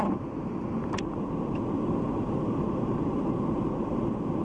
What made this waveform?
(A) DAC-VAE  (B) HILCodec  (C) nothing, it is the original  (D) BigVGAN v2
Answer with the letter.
D